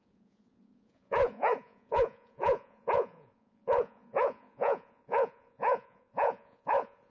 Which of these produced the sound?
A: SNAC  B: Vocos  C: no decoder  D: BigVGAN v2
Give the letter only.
B